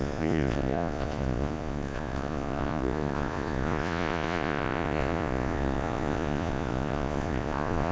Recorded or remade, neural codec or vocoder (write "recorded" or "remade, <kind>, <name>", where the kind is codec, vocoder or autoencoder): remade, vocoder, Vocos